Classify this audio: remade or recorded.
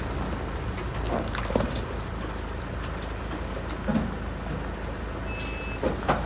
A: recorded